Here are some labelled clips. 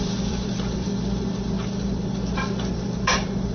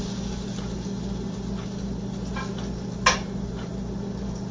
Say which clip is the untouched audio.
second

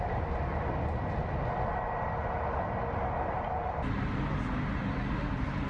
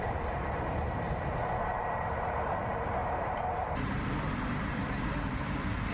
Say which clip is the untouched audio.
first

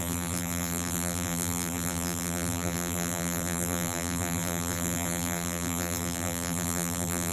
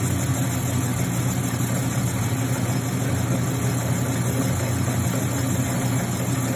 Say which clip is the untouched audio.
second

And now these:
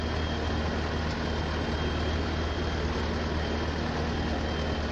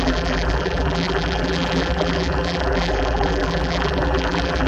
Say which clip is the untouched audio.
first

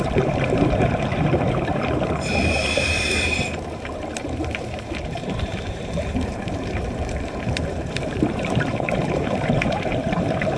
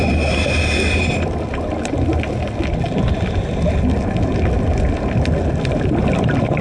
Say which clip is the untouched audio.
second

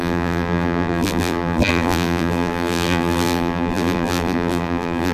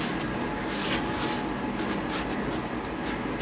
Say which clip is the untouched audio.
second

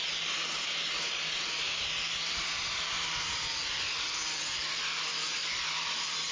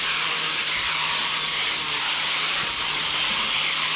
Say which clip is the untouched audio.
first